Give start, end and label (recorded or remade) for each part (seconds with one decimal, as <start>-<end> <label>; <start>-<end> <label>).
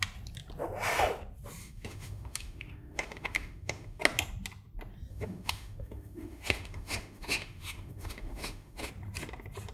0.0-1.6 recorded; 1.6-4.0 remade; 4.0-5.1 recorded; 5.1-8.9 remade; 8.9-9.7 recorded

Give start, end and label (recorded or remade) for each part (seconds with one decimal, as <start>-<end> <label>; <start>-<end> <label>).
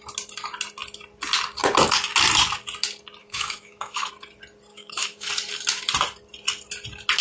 0.0-3.2 recorded; 3.2-4.1 remade; 4.1-4.7 recorded; 4.7-5.3 remade; 5.3-7.2 recorded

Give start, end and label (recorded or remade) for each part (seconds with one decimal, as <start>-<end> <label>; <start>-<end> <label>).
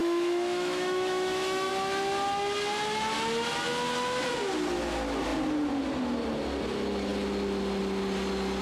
0.0-1.7 remade; 1.7-8.6 recorded